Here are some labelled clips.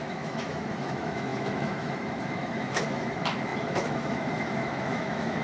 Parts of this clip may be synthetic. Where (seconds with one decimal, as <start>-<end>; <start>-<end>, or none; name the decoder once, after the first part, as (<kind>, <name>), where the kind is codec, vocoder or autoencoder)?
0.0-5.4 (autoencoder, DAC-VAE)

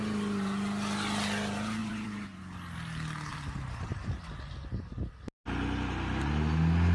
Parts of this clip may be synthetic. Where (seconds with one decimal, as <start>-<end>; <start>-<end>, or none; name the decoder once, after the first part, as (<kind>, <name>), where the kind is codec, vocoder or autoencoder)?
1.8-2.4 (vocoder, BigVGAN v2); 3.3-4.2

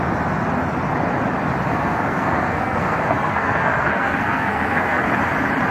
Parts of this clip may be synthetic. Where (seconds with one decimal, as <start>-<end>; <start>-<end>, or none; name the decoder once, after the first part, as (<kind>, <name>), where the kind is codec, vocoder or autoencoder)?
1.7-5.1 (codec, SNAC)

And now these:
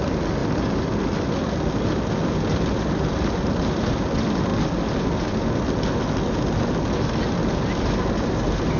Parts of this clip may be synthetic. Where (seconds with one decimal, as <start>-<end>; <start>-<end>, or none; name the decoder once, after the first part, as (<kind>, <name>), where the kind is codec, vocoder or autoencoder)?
none